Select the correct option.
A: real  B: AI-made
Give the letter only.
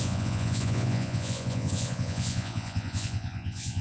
B